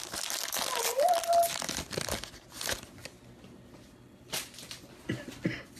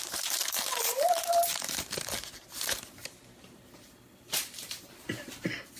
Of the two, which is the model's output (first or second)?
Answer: second